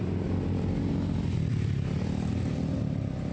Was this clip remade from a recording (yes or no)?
no